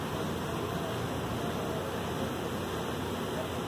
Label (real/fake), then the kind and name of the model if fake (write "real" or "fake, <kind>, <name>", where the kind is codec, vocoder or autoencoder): real